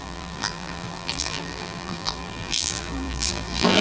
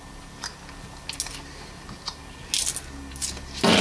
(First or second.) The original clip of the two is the second